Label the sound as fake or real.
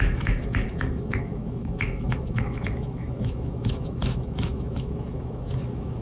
fake